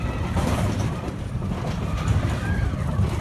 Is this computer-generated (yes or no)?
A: yes